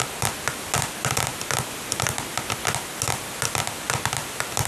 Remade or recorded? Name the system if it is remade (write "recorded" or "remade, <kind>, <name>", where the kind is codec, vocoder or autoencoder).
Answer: recorded